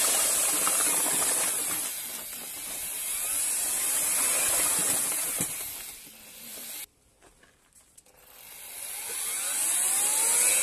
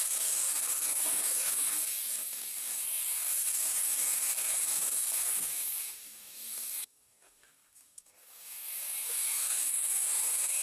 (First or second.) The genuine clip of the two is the first